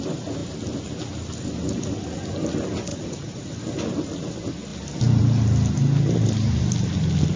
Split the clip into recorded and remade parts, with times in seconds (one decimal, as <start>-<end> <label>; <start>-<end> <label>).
0.0-2.9 recorded; 2.9-3.5 remade; 3.5-7.4 recorded